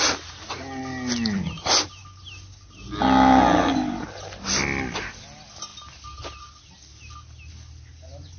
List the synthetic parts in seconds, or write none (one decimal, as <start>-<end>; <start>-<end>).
none